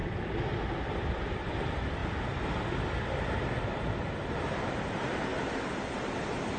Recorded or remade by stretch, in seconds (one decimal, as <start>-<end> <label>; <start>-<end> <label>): 0.0-2.0 remade; 2.0-4.3 recorded; 4.3-5.3 remade; 5.3-5.9 recorded; 5.9-6.6 remade